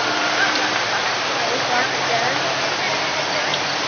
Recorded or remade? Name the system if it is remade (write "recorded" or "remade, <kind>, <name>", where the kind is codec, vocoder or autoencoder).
recorded